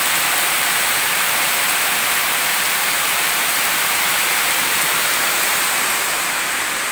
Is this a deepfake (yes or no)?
yes